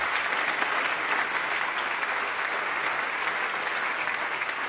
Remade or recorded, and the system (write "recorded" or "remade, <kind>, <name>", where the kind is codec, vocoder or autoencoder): recorded